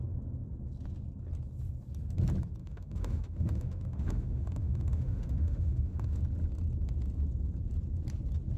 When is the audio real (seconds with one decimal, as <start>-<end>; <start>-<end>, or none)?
0.0-2.6; 6.2-8.6